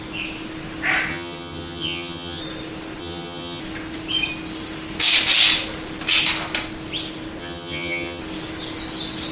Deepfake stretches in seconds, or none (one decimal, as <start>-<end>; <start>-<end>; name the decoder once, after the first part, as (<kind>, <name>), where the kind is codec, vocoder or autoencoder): 1.1-2.4 (vocoder, HiFi-GAN); 3.0-3.6; 7.4-8.2